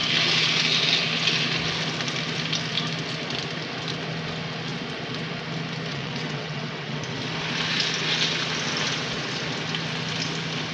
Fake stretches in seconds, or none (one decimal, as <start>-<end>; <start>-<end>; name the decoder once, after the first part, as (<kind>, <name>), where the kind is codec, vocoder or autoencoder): 5.9-7.0 (vocoder, WaveNeXt)